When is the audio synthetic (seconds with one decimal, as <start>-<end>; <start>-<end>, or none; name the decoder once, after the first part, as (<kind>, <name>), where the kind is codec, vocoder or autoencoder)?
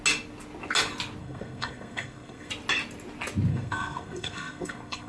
1.2-2.5 (codec, SNAC); 3.5-5.1